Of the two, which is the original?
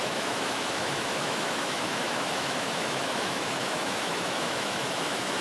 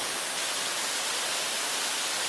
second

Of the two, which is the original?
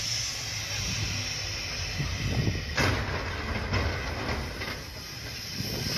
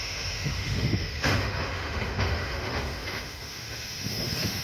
first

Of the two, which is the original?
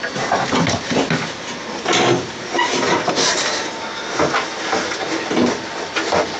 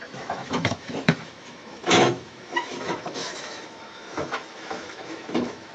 first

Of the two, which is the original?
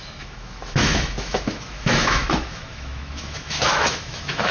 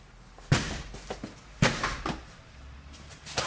second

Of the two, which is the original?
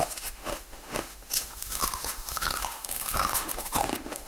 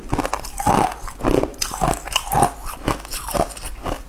second